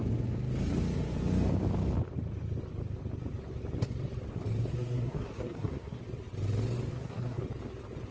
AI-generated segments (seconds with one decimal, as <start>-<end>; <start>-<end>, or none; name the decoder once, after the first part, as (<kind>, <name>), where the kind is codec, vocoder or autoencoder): 4.7-6.0 (codec, SNAC); 6.9-7.4